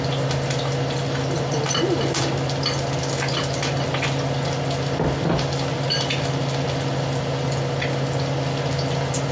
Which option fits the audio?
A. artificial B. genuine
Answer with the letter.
B